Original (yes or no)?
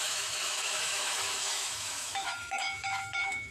no